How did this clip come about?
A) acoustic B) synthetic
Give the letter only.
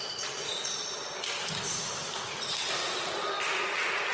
A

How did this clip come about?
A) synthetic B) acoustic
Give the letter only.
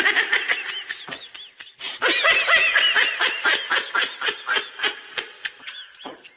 B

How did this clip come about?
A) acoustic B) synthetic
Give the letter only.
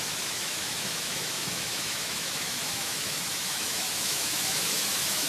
B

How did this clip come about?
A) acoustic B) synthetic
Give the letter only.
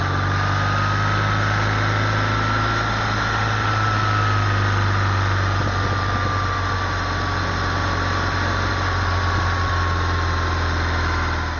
A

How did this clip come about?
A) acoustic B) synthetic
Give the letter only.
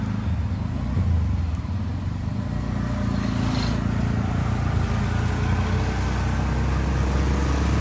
A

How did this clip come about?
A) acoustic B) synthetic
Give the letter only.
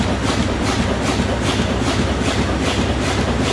A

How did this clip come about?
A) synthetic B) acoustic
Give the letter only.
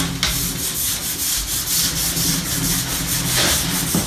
B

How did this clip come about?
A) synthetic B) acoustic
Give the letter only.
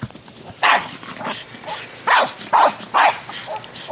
B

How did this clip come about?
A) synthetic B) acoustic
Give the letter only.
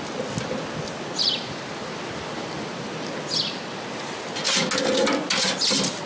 B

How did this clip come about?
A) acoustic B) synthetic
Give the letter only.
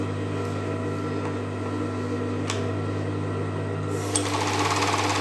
A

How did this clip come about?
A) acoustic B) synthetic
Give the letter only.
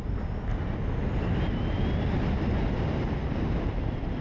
A